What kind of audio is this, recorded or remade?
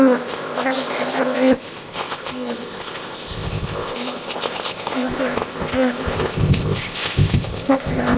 remade